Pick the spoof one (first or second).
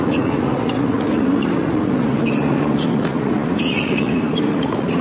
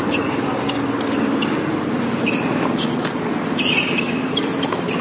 first